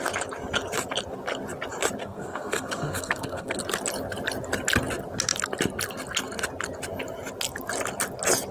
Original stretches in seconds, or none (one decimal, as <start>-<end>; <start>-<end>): 0.0-2.0; 3.6-8.5